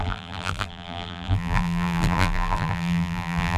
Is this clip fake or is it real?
fake